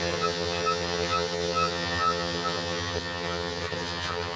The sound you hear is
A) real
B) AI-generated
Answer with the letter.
B